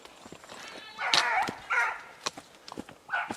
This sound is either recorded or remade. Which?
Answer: recorded